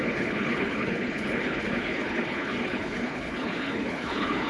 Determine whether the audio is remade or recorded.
remade